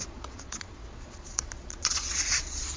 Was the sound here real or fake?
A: fake